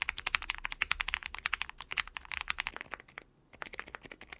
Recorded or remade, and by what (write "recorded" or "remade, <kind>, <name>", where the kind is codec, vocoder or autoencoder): recorded